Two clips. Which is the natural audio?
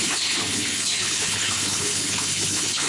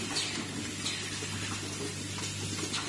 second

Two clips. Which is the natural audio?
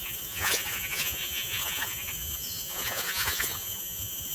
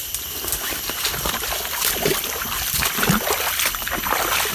second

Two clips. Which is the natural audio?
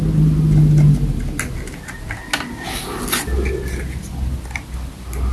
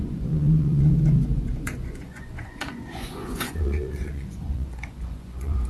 first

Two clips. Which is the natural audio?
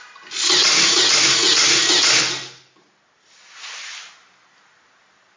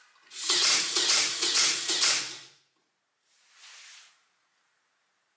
first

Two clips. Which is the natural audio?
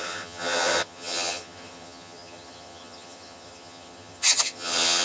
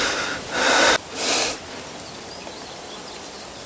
second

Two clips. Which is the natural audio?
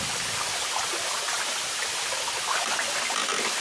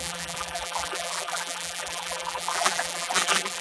first